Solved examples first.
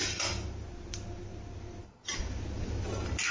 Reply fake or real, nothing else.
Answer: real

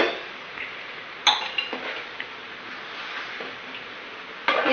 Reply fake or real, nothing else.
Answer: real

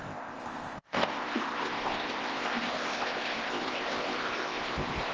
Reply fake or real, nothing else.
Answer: fake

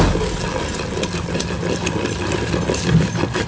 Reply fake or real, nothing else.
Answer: real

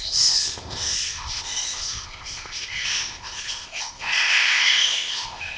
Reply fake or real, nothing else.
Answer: fake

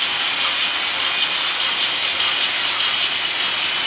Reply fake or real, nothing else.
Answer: real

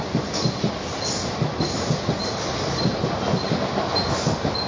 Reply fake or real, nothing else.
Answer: real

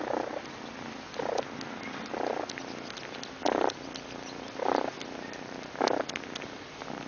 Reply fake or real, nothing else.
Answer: real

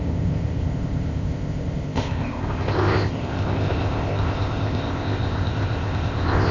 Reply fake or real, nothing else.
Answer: fake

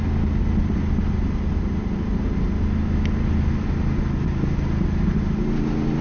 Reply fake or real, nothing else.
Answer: real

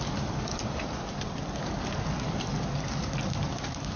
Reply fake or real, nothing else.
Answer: real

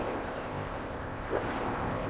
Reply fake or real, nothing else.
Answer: fake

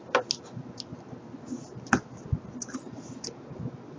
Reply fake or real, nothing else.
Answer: real